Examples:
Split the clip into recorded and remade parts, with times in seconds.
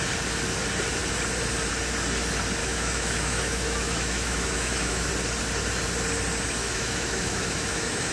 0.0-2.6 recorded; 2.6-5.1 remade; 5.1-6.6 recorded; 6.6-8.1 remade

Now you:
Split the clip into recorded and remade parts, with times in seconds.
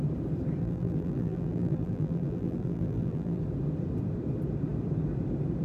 0.0-0.6 recorded; 0.6-3.4 remade; 3.4-5.6 recorded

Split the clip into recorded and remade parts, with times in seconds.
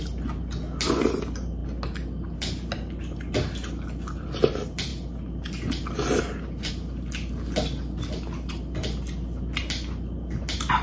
0.0-10.8 recorded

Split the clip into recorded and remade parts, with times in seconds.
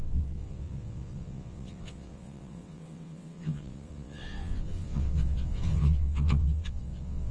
0.0-7.3 remade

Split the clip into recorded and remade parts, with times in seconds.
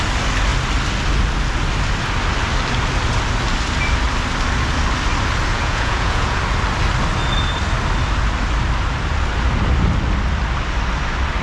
0.0-5.5 recorded; 5.5-6.4 remade; 6.4-11.4 recorded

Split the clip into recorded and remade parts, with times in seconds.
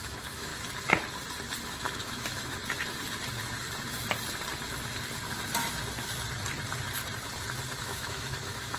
0.0-0.5 remade; 0.5-1.7 recorded; 1.7-2.6 remade; 2.6-7.8 recorded; 7.8-8.8 remade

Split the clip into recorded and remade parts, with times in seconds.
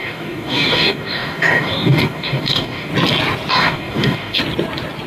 0.0-2.9 remade; 2.9-3.5 recorded; 3.5-4.4 remade; 4.4-5.1 recorded